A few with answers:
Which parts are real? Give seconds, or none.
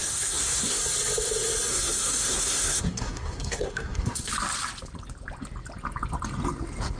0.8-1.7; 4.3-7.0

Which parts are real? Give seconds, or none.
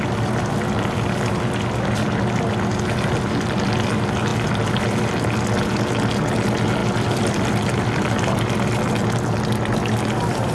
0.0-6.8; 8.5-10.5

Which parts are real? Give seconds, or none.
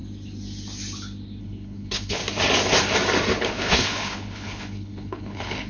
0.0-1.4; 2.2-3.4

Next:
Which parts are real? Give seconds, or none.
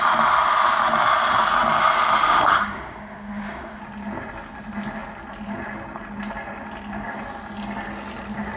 0.0-2.2; 3.8-8.6